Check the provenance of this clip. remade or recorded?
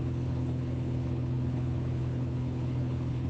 remade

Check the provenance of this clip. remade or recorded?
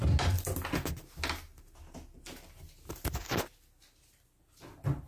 recorded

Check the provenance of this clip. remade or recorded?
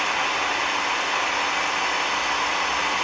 recorded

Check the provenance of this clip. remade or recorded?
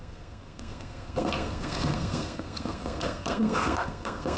remade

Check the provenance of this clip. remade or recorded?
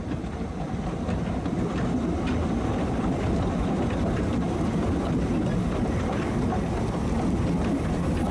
recorded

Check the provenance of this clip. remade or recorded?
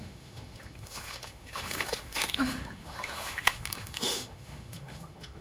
remade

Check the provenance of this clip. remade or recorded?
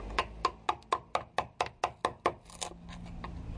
recorded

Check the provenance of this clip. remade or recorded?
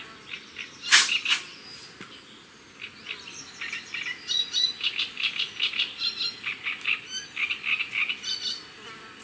recorded